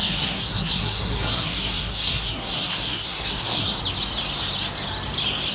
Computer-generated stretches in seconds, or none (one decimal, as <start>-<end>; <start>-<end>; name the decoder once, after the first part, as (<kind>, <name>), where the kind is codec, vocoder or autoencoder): 0.0-3.8 (codec, SNAC)